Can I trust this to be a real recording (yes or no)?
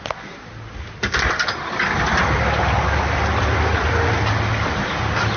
yes